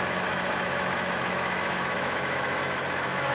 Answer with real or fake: fake